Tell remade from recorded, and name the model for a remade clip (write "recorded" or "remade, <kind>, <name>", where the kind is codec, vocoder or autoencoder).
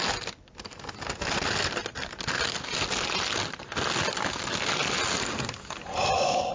recorded